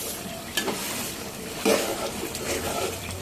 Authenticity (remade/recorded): remade